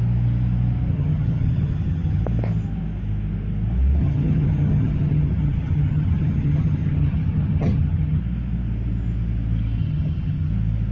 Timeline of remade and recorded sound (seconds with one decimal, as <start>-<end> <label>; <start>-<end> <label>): 0.0-0.9 recorded; 0.9-2.2 remade; 2.2-4.0 recorded; 4.0-8.2 remade; 8.2-9.8 recorded; 9.8-10.5 remade; 10.5-10.9 recorded